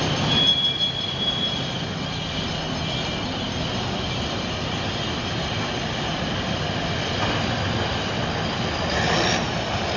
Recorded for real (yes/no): yes